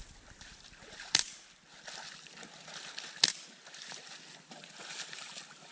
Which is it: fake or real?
real